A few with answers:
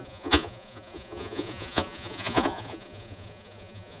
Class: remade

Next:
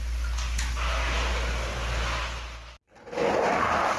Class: recorded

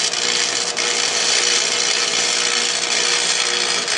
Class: recorded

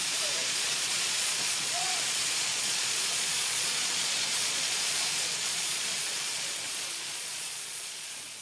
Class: remade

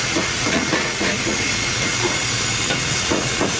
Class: remade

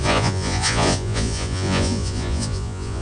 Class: remade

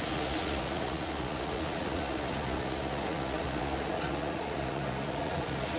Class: remade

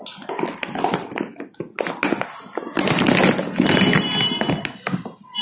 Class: recorded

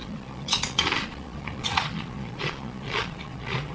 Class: remade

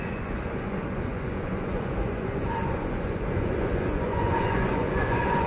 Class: remade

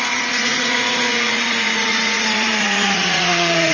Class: remade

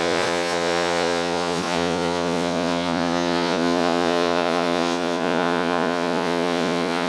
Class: remade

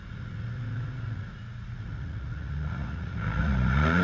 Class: remade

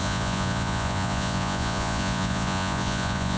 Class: remade